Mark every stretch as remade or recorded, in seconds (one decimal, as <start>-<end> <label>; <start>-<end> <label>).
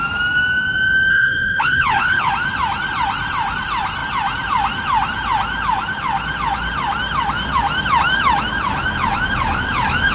0.0-1.1 recorded; 1.1-2.3 remade; 2.3-10.1 recorded